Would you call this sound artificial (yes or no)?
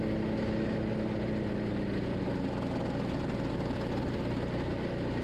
no